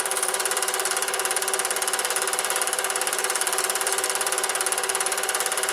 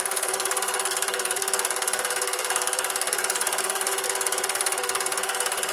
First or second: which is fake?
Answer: second